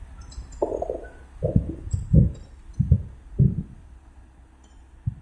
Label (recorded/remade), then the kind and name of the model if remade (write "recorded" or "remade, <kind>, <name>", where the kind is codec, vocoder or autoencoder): recorded